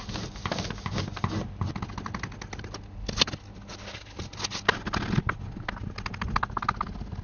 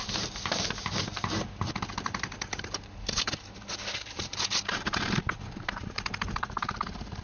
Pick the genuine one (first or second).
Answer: first